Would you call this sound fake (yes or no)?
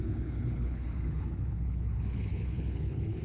yes